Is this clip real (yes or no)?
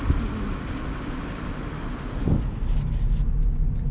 yes